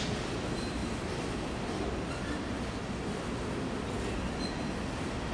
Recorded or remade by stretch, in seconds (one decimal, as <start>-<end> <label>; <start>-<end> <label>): 0.0-5.3 recorded